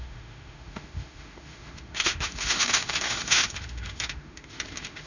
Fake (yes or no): yes